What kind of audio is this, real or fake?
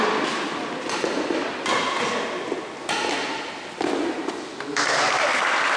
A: real